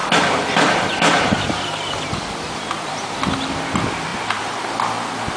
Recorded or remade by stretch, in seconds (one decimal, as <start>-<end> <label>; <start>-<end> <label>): 0.0-3.2 remade; 3.2-4.1 recorded; 4.1-4.6 remade; 4.6-5.4 recorded